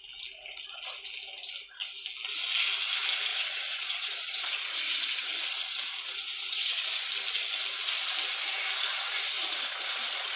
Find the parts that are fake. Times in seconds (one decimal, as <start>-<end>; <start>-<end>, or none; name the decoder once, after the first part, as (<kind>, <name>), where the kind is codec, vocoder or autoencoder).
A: 3.3-7.1 (vocoder, Vocos); 8.9-10.4